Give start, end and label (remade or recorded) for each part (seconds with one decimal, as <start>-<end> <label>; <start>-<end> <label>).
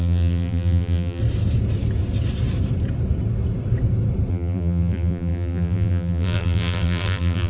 0.0-1.2 remade; 1.2-4.3 recorded; 4.3-7.5 remade